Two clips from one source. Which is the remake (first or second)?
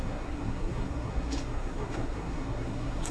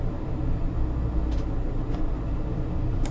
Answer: first